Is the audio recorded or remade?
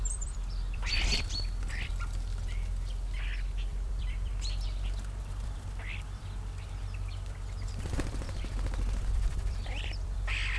remade